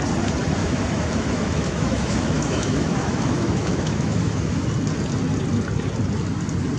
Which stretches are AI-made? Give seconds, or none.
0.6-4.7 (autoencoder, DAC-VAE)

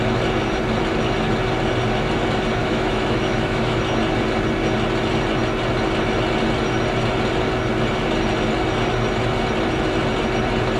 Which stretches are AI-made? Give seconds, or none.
2.6-3.8 (autoencoder, DAC-VAE)

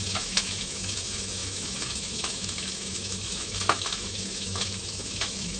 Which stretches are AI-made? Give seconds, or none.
0.0-5.6 (autoencoder, DAC-VAE)